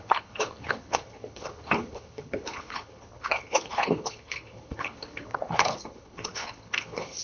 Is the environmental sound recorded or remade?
remade